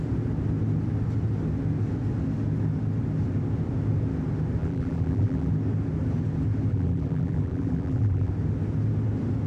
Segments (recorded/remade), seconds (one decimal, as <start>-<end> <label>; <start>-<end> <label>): 0.0-4.6 recorded; 4.6-5.5 remade; 5.5-6.7 recorded; 6.7-8.3 remade; 8.3-9.5 recorded